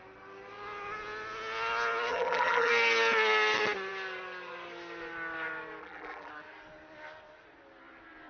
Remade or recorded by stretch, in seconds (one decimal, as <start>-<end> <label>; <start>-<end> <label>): 0.0-2.1 recorded; 2.1-2.7 remade; 2.7-5.8 recorded; 5.8-6.3 remade; 6.3-8.3 recorded